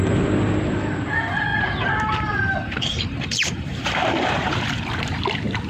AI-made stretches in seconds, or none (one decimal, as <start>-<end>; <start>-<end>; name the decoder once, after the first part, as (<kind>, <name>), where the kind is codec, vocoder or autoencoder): 1.5-4.8 (vocoder, BigVGAN v2)